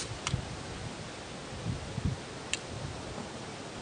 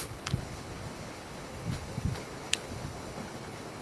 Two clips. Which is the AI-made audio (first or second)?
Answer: second